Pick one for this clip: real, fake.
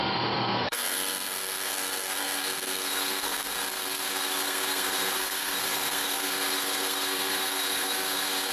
fake